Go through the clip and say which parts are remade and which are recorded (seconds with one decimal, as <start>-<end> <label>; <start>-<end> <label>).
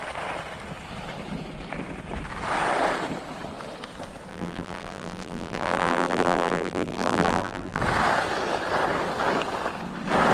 0.0-4.3 recorded; 4.3-7.8 remade; 7.8-10.3 recorded